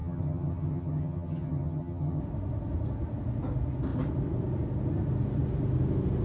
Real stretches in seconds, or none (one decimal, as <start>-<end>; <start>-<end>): 2.2-6.2